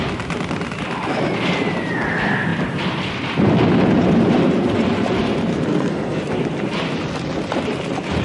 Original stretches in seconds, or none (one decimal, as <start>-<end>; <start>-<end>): 0.0-5.5; 6.2-8.2